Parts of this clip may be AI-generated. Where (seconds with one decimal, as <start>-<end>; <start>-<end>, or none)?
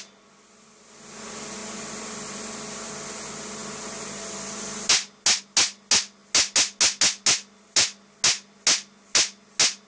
none